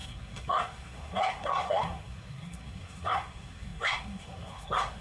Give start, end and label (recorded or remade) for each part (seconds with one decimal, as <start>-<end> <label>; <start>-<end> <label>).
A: 0.0-5.0 remade